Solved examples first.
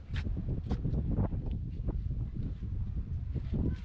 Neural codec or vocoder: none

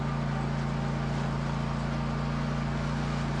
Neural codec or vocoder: none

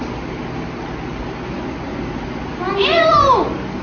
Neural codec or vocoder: none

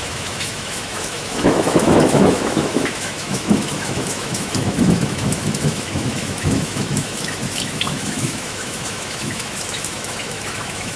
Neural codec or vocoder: autoencoder, DAC-VAE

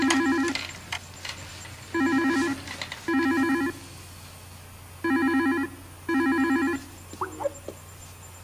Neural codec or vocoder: none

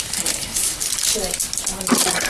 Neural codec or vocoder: none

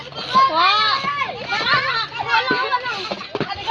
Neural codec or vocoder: none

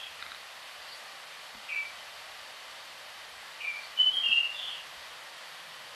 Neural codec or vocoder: none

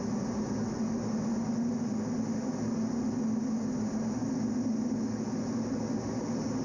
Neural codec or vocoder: none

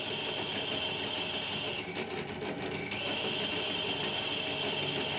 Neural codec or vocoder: none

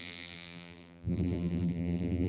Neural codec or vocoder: vocoder, BigVGAN v2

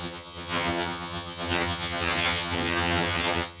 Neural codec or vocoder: vocoder, HiFi-GAN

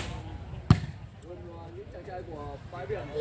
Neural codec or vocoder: none